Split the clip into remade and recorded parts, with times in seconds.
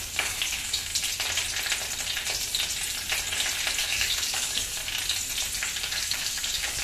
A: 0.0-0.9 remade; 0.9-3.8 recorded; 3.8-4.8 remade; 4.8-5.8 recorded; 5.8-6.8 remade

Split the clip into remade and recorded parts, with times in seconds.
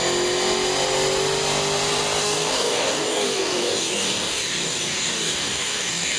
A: 0.0-2.2 recorded; 2.2-6.2 remade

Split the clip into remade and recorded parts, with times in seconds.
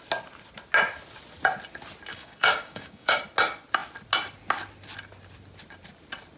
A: 0.0-2.1 recorded; 2.1-3.2 remade; 3.2-6.4 recorded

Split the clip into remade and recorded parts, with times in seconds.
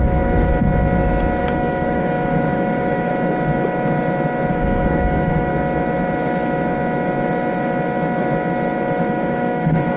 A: 0.0-0.5 remade; 0.5-1.4 recorded; 1.4-3.1 remade; 3.1-4.5 recorded; 4.5-5.5 remade; 5.5-9.0 recorded; 9.0-10.0 remade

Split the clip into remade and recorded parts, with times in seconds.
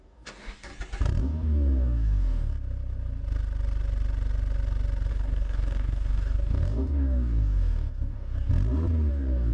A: 0.0-0.7 remade; 0.7-1.2 recorded; 1.2-2.5 remade; 2.5-5.1 recorded; 5.1-8.5 remade; 8.5-9.1 recorded; 9.1-9.5 remade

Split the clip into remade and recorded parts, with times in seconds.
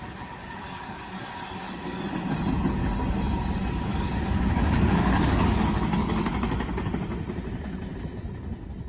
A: 0.0-0.4 recorded; 0.4-2.0 remade; 2.0-3.9 recorded; 3.9-6.9 remade; 6.9-8.9 recorded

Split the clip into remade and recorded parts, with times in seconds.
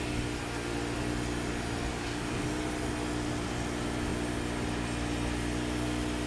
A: 0.0-1.9 recorded; 1.9-2.4 remade; 2.4-6.3 recorded